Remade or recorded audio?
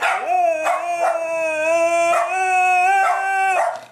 recorded